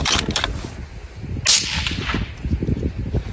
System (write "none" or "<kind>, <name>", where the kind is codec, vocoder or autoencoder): none